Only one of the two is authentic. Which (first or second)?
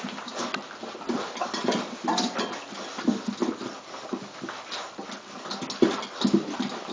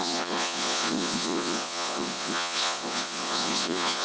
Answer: first